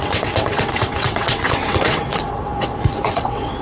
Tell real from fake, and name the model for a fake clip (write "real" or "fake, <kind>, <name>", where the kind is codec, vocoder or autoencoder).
fake, vocoder, WaveNeXt